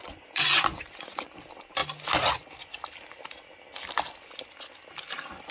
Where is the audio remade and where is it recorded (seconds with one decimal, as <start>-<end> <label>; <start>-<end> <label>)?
0.0-1.3 remade; 1.3-5.5 recorded